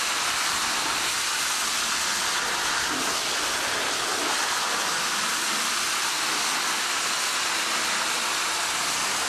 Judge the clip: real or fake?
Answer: real